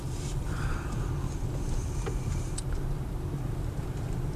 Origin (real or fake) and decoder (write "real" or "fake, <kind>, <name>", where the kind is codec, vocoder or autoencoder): real